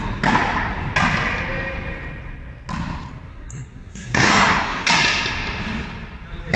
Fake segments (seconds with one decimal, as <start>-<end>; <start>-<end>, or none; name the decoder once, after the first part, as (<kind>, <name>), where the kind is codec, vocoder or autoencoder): 3.3-4.9 (codec, SNAC)